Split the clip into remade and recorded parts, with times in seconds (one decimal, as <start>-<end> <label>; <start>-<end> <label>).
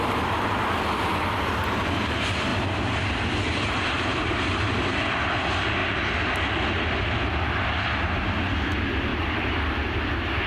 0.0-2.5 recorded; 2.5-4.7 remade; 4.7-9.1 recorded; 9.1-10.0 remade; 10.0-10.5 recorded